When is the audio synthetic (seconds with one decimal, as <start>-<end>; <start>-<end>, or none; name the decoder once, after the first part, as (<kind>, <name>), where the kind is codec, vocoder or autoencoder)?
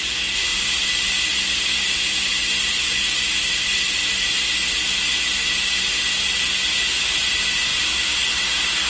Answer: none